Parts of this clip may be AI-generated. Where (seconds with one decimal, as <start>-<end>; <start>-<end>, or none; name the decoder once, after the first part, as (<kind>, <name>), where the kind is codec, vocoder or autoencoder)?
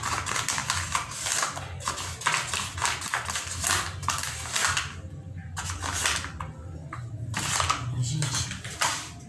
none